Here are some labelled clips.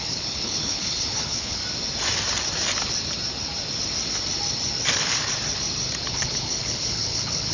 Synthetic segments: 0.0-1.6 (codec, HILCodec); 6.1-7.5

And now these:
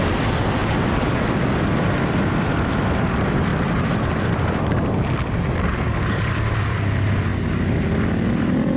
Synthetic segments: 0.0-0.6 (vocoder, BigVGAN v2); 1.1-7.3; 8.3-8.8

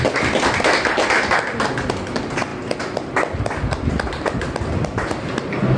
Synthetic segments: none

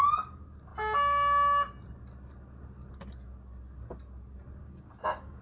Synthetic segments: 4.6-5.4 (codec, DAC)

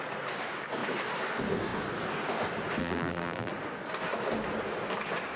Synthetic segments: 2.8-3.5 (vocoder, BigVGAN v2)

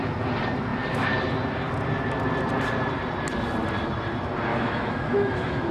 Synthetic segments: 4.5-5.7 (autoencoder, DAC-VAE)

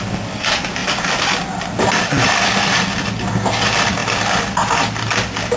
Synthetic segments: none

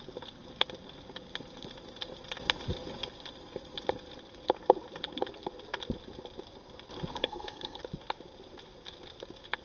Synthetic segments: 7.2-7.8 (codec, SNAC)